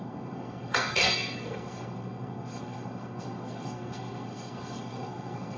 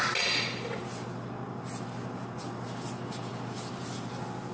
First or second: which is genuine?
second